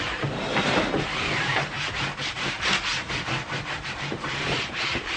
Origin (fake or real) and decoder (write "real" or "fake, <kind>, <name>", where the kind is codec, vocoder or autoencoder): fake, vocoder, BigVGAN v2